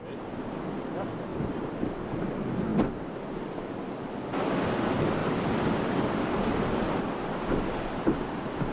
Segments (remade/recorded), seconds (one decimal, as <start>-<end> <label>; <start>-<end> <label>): 0.0-1.3 recorded; 1.3-2.2 remade; 2.2-2.7 recorded; 2.7-3.6 remade; 3.6-5.2 recorded; 5.2-7.1 remade; 7.1-8.7 recorded